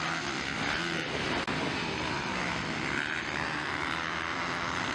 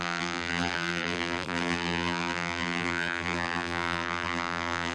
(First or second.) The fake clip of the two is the second